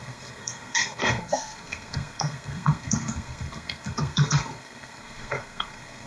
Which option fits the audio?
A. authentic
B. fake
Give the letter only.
B